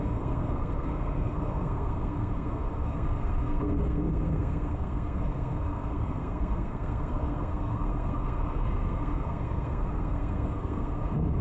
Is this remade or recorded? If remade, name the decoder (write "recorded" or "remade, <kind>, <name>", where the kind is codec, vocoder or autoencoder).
remade, codec, SNAC